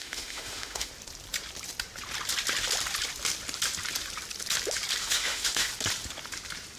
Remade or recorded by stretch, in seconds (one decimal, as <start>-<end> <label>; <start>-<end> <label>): 0.0-0.9 remade; 0.9-5.0 recorded; 5.0-5.7 remade; 5.7-6.8 recorded